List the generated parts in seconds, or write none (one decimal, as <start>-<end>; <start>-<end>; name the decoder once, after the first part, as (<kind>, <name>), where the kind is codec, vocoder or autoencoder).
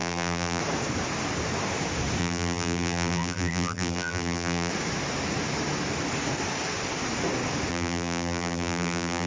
0.0-0.6 (vocoder, BigVGAN v2); 2.2-4.7; 7.7-9.3